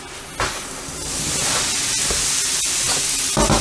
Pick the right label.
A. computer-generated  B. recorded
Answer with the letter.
B